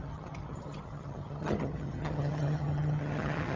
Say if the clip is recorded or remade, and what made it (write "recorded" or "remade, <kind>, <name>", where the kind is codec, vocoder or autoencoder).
remade, vocoder, HiFi-GAN